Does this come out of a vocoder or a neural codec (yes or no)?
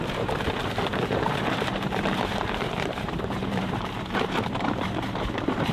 yes